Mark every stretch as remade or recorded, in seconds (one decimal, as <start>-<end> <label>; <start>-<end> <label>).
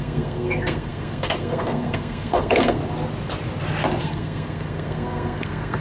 0.0-2.8 remade; 2.8-4.0 recorded; 4.0-5.8 remade